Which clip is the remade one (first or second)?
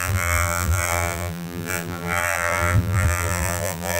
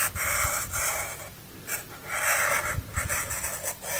first